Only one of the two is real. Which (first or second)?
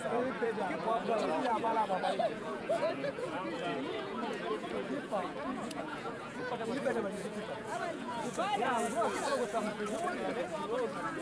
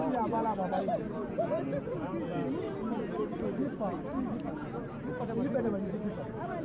second